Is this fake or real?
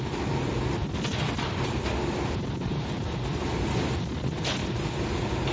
real